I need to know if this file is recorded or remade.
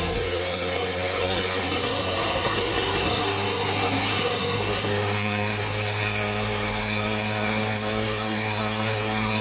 remade